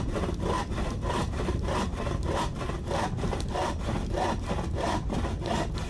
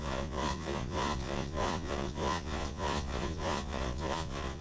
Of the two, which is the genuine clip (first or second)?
first